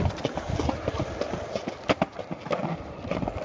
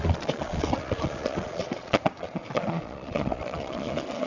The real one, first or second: first